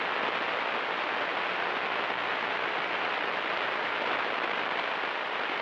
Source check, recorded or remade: recorded